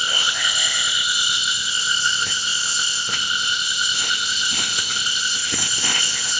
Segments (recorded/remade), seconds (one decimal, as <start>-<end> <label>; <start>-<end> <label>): 0.0-6.4 remade